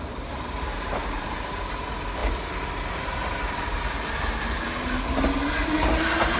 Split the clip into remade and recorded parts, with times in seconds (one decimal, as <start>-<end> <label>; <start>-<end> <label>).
0.0-0.7 recorded; 0.7-1.6 remade; 1.6-6.4 recorded